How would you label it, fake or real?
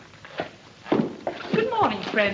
real